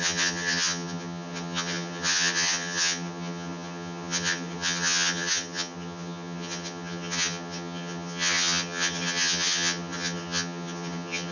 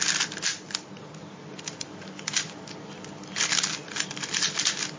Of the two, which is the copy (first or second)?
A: first